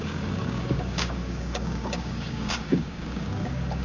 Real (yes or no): no